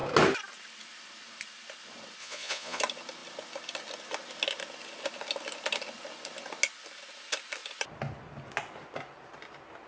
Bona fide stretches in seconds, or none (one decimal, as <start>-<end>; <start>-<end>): 0.0-2.2; 2.8-9.9